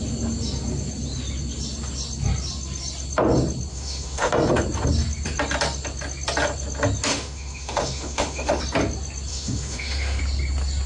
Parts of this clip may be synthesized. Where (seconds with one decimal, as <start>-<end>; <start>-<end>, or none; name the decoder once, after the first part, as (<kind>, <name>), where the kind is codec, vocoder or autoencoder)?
3.7-4.3 (autoencoder, DAC-VAE); 7.1-8.6; 9.3-10.2